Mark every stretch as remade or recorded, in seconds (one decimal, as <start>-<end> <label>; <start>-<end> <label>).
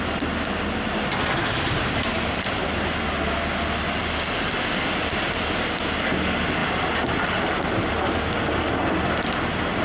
0.0-9.8 recorded